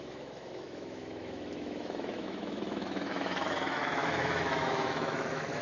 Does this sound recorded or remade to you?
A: remade